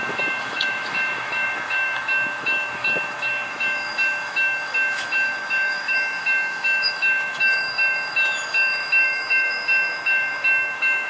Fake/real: fake